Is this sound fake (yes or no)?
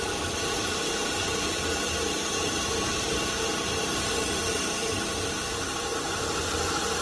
yes